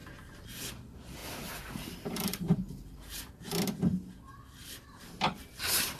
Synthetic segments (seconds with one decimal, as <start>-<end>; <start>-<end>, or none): 1.2-3.2; 5.0-6.0